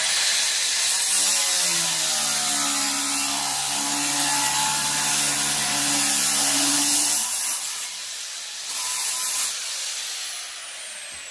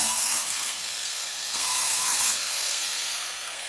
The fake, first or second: second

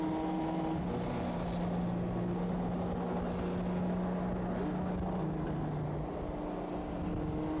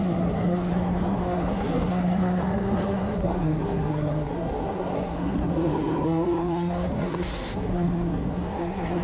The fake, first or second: second